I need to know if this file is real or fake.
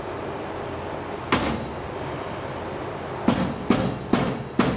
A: real